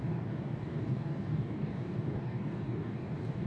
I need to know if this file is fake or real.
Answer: fake